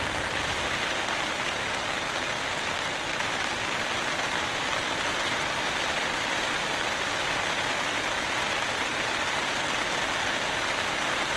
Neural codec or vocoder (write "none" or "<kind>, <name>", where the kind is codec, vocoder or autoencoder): vocoder, BigVGAN v2